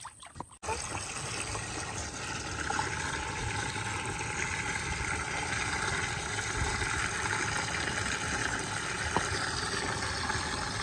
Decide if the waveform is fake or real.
real